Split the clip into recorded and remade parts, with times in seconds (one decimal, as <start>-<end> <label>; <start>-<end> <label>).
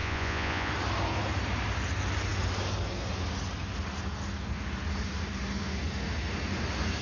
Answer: 0.0-0.7 remade; 0.7-7.0 recorded